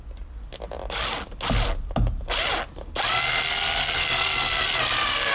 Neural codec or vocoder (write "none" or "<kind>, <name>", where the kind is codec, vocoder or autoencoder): none